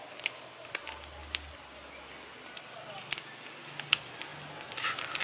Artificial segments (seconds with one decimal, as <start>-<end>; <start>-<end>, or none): none